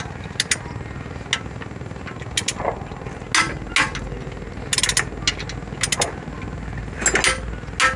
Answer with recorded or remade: recorded